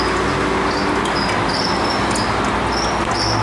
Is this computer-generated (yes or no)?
no